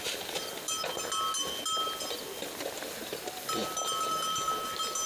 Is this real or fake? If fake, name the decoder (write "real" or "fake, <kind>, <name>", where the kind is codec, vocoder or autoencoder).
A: real